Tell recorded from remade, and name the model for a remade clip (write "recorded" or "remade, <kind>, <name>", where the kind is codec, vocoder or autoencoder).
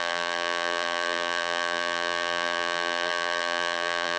remade, vocoder, BigVGAN v2